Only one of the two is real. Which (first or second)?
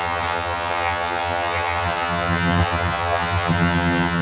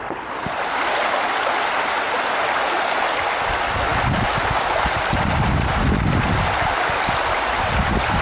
second